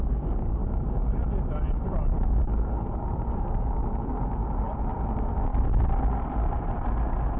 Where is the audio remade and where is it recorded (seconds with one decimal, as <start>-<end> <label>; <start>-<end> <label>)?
0.0-0.6 remade; 0.6-2.3 recorded; 2.3-4.4 remade; 4.4-5.1 recorded; 5.1-5.5 remade; 5.5-7.4 recorded

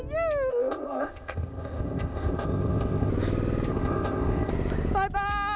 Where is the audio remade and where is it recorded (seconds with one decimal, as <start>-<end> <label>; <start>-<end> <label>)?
0.0-0.5 recorded; 0.5-3.1 remade; 3.1-3.7 recorded; 3.7-4.5 remade; 4.5-5.6 recorded

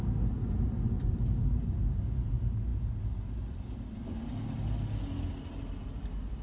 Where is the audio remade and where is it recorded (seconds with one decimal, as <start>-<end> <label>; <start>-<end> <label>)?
0.0-6.4 recorded

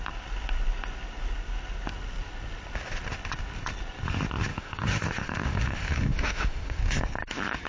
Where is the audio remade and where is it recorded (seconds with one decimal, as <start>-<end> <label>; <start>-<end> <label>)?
0.0-4.5 recorded; 4.5-6.8 remade; 6.8-7.7 recorded

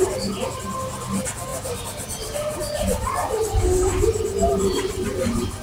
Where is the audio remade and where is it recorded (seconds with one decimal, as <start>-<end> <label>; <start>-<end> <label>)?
0.0-1.5 recorded; 1.5-4.9 remade; 4.9-5.6 recorded

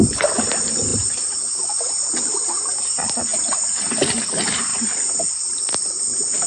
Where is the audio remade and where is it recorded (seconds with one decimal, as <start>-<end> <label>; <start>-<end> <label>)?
0.0-6.5 recorded

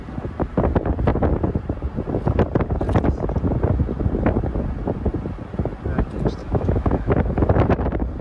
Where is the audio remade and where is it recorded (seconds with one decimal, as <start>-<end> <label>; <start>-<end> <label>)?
0.0-6.4 recorded; 6.4-7.1 remade; 7.1-8.2 recorded

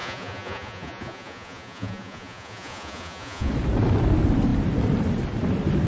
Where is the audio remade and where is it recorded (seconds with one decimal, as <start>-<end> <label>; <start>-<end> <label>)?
0.0-3.5 remade; 3.5-5.9 recorded